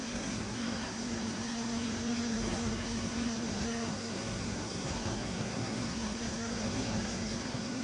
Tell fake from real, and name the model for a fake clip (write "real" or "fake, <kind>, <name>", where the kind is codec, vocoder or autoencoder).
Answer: fake, codec, SNAC